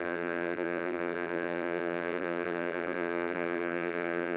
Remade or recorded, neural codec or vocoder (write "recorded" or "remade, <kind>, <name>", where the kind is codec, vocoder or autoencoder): remade, vocoder, BigVGAN v2